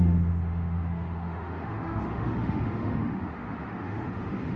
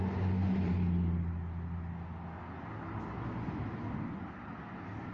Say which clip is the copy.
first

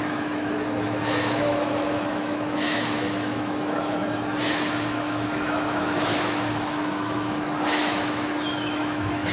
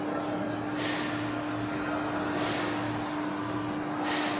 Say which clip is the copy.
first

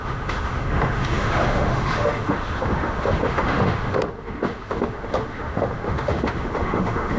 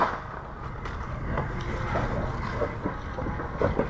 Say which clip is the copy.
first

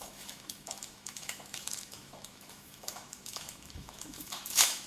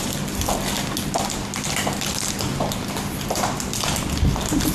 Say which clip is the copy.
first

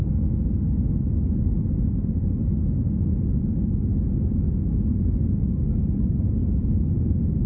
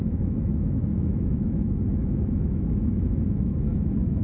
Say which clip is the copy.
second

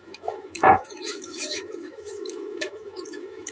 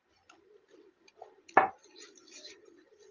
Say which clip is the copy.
first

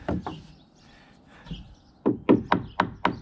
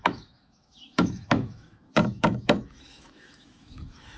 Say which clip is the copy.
second